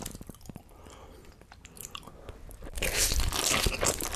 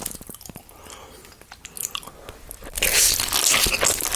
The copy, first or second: first